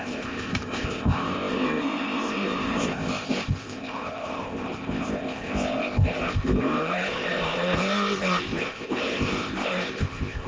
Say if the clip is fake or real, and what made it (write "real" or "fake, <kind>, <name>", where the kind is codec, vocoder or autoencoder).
fake, codec, ZipCodec